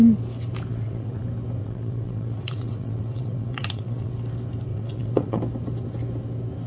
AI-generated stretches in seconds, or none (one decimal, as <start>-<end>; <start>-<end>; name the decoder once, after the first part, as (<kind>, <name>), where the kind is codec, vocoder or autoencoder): 0.7-1.2 (vocoder, WaveNeXt); 1.6-4.1; 4.7-5.4